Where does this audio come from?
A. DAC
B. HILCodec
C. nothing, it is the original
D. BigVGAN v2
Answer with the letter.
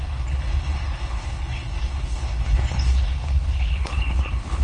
B